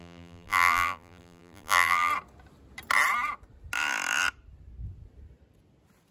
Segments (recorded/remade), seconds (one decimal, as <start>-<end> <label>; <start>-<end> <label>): 0.0-2.1 remade; 2.1-6.1 recorded